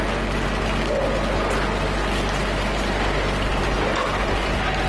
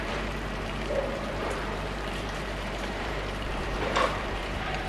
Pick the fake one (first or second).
second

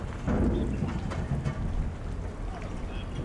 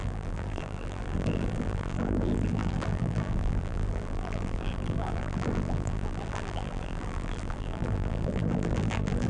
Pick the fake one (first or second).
second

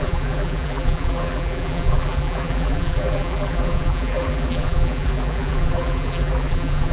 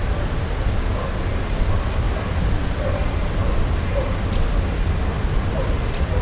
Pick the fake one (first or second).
first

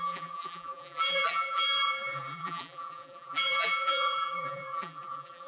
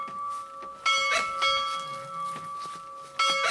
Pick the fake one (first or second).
first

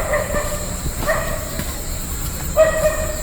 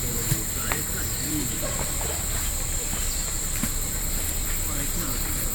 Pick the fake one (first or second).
second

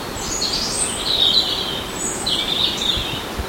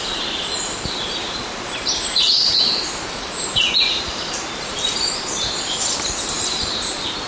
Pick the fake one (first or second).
second